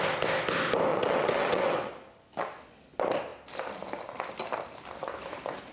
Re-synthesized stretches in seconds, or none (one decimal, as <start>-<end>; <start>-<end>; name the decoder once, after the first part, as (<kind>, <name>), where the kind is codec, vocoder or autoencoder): 0.9-1.9 (vocoder, WaveNeXt)